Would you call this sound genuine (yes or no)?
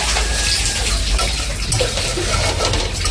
yes